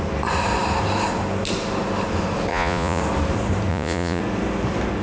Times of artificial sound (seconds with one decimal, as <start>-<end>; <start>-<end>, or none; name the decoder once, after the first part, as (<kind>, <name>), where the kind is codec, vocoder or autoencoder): 2.5-3.0 (vocoder, Vocos); 3.7-4.2